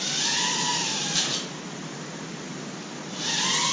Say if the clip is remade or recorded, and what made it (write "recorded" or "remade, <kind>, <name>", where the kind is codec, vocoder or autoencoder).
recorded